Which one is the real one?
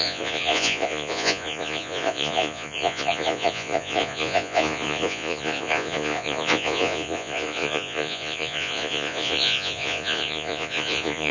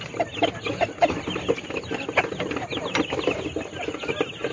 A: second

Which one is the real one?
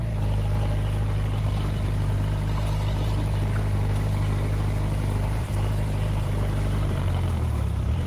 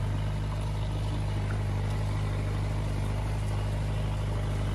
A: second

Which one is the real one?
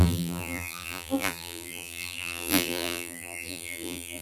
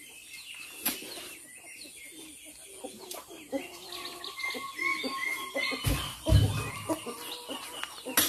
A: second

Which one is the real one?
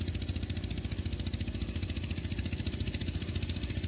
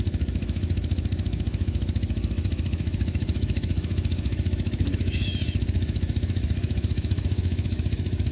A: first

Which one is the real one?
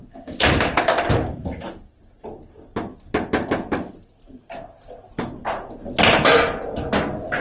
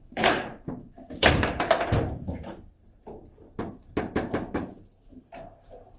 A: first